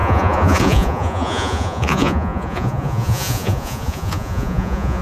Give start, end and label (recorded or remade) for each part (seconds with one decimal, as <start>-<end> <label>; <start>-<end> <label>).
0.0-5.0 remade